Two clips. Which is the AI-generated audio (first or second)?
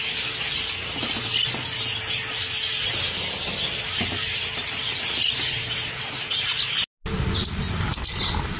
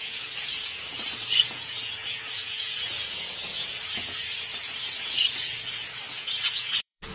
second